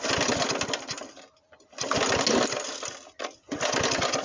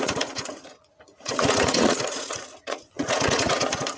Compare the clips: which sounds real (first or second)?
first